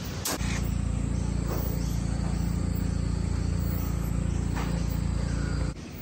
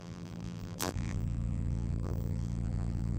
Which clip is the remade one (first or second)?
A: second